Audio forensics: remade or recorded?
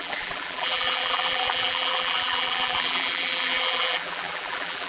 remade